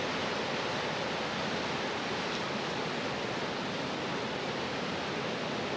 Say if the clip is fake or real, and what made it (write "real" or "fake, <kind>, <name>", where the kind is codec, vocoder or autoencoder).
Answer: real